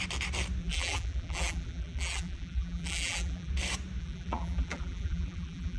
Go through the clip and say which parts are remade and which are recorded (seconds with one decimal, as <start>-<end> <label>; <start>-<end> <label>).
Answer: 0.0-0.6 recorded; 0.6-3.5 remade; 3.5-4.0 recorded; 4.0-5.8 remade